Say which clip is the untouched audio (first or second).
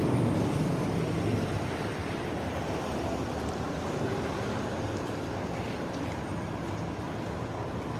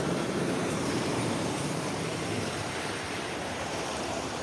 first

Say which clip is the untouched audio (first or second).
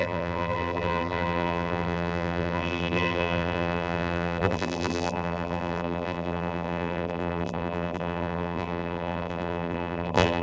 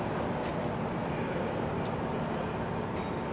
second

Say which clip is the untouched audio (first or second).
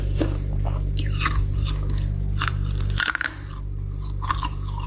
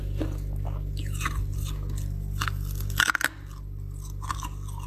second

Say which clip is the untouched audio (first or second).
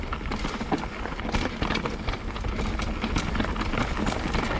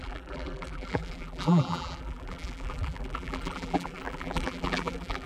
first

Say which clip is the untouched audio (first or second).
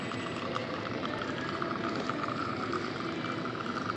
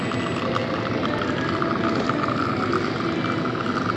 second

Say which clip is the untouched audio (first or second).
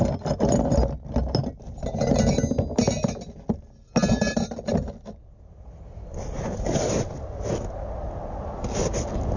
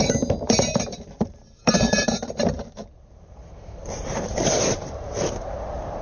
first